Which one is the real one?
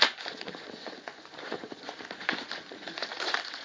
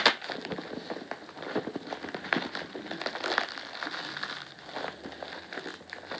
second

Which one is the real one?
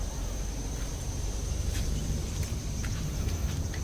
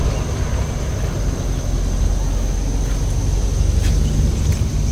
second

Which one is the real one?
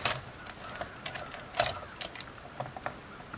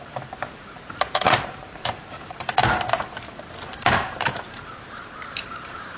first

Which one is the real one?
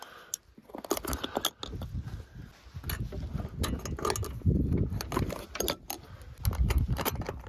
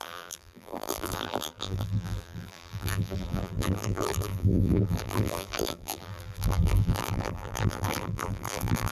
first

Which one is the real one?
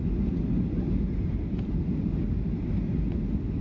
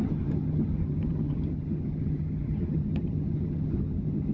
first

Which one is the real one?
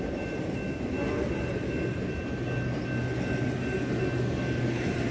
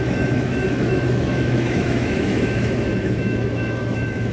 first